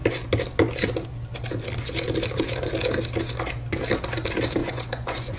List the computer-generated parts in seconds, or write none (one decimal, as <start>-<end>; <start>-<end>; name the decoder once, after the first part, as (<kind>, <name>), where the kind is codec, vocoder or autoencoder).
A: 4.6-5.4 (vocoder, Vocos)